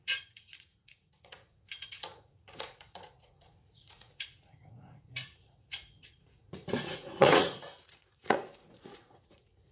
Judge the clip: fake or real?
fake